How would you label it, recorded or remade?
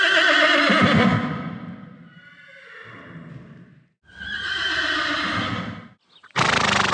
recorded